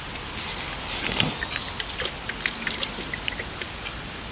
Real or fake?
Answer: real